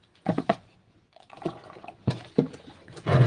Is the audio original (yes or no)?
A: no